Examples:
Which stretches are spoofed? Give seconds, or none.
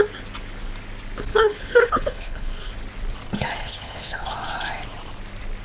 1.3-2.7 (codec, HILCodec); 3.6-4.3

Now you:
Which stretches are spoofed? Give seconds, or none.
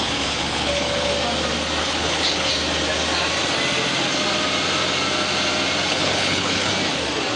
0.0-1.1 (codec, HILCodec); 1.8-2.5; 5.9-6.7